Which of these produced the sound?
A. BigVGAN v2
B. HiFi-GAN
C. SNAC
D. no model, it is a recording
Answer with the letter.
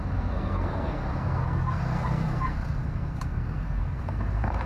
C